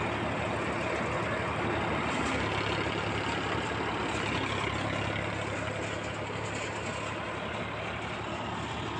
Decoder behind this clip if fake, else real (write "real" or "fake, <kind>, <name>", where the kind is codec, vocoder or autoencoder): real